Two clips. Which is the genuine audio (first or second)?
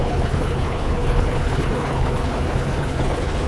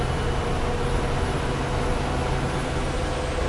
second